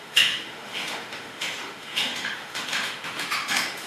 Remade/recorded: remade